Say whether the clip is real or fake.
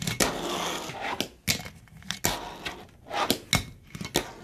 real